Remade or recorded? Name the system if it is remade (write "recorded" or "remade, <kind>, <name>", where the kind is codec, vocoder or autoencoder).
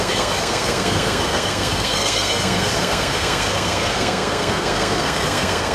remade, codec, SNAC